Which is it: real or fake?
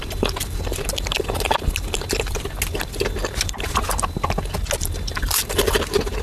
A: real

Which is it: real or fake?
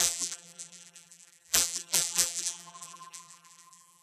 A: fake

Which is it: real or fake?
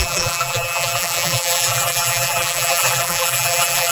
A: fake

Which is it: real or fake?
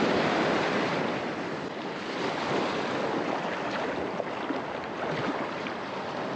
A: real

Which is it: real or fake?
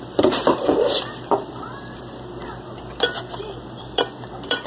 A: fake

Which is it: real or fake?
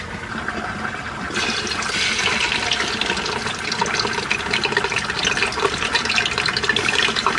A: real